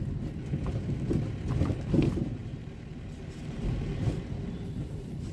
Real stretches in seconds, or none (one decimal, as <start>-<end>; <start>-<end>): 0.0-2.3